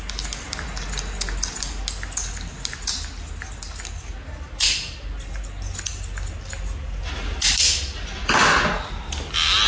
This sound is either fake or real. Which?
real